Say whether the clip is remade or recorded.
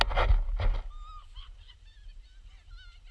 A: recorded